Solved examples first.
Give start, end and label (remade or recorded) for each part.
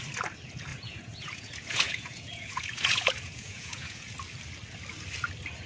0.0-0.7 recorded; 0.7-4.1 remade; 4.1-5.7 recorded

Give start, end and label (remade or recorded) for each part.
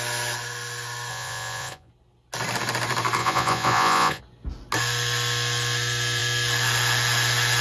0.0-1.1 recorded; 1.1-1.9 remade; 1.9-3.2 recorded; 3.2-4.2 remade; 4.2-7.6 recorded